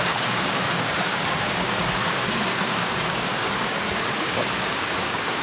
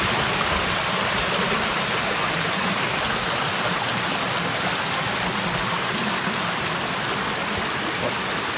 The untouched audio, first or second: second